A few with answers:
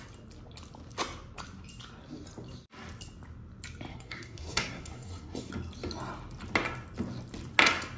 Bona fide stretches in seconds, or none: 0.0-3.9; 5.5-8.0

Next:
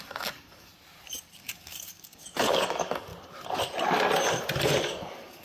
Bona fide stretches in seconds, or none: 0.7-1.4; 3.1-4.6

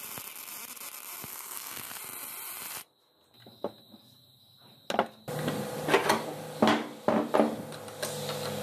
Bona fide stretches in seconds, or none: 0.0-1.3; 1.9-8.6

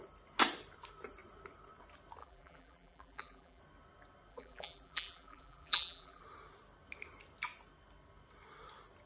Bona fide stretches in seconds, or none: 0.0-2.2; 3.6-4.3; 6.2-9.1

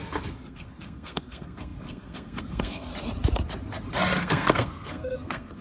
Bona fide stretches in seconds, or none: 2.9-4.2